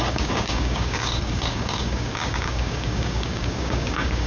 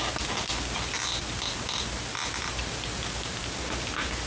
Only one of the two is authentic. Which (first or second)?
second